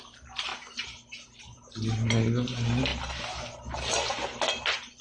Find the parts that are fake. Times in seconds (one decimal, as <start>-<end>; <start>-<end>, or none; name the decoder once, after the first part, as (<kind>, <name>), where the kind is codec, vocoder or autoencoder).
none

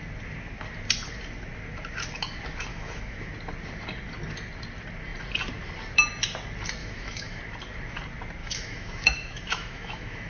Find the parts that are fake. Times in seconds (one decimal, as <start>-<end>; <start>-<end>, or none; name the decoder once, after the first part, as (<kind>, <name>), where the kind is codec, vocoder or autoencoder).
2.7-3.3 (autoencoder, DAC-VAE); 6.8-7.4; 8.4-10.3